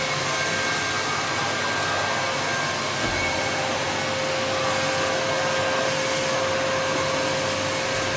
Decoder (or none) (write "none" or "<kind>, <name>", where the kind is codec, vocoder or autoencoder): none